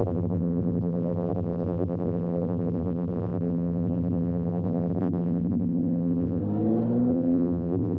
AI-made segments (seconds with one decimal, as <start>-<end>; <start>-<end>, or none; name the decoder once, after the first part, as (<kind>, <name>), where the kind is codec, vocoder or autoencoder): 0.0-6.4 (vocoder, BigVGAN v2); 7.1-8.0

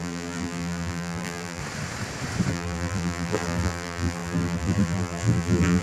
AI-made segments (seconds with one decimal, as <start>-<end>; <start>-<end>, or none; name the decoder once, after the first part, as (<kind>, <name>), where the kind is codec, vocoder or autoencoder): 0.0-1.6 (vocoder, BigVGAN v2); 2.5-5.8